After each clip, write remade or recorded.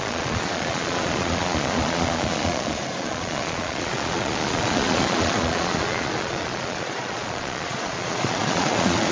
remade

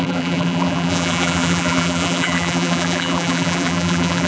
remade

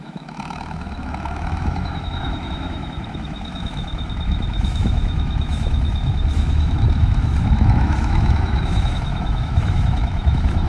remade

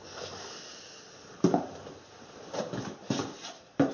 recorded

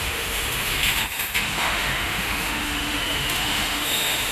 remade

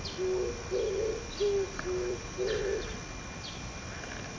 recorded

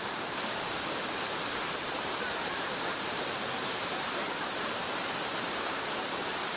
remade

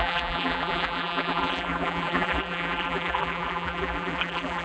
remade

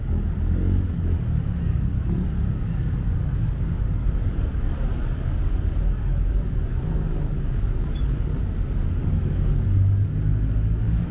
remade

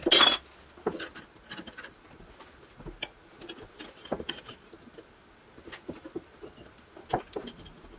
recorded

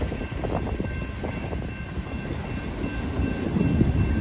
recorded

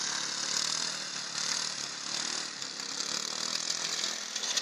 recorded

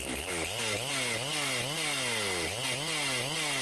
recorded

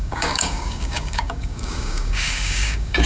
remade